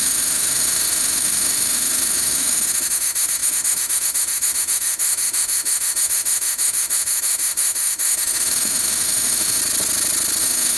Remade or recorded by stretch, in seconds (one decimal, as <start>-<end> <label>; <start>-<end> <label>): 0.0-9.6 remade; 9.6-10.4 recorded; 10.4-10.8 remade